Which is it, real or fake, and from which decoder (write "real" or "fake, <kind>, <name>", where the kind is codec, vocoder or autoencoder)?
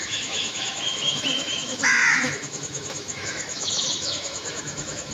fake, autoencoder, DAC-VAE